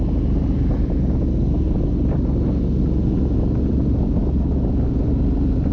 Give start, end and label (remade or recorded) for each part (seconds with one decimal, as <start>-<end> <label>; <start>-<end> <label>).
0.0-5.7 recorded